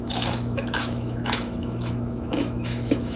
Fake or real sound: fake